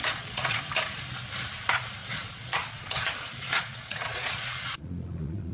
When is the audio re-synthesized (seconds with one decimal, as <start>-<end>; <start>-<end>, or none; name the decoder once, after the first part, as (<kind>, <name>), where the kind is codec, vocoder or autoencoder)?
0.0-0.6 (vocoder, Vocos); 2.0-5.5